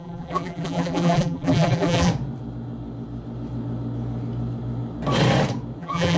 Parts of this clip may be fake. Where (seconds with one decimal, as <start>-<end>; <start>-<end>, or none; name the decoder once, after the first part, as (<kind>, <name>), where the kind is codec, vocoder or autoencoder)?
0.0-2.1 (vocoder, BigVGAN v2); 5.8-6.2